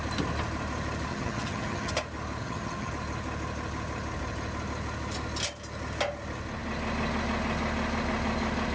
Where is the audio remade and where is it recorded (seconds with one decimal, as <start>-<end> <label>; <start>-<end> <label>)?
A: 0.0-1.1 recorded; 1.1-1.9 remade; 1.9-2.4 recorded; 2.4-2.9 remade; 2.9-8.7 recorded